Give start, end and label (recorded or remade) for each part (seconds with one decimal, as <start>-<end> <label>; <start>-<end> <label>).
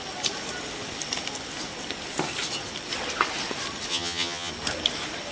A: 0.0-3.9 recorded; 3.9-4.5 remade; 4.5-5.3 recorded